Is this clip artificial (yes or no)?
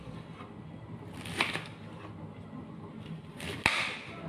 no